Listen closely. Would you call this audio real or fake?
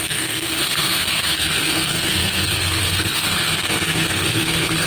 fake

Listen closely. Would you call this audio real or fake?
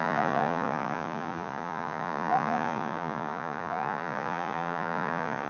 fake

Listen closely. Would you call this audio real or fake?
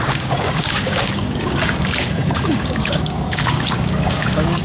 fake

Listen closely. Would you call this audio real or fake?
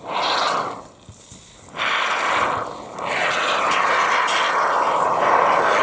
real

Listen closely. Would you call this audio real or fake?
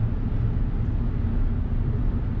real